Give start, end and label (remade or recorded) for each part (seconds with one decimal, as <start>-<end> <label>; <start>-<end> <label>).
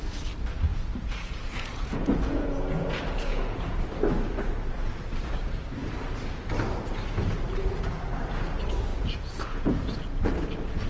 0.0-0.7 recorded; 0.7-3.8 remade; 3.8-8.9 recorded; 8.9-10.3 remade; 10.3-10.9 recorded